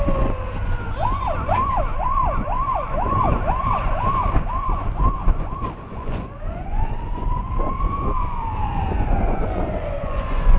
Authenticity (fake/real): fake